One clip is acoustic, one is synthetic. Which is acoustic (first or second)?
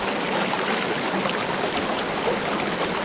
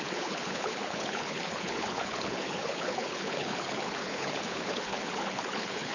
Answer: first